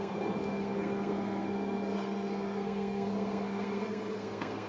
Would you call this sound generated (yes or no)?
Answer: yes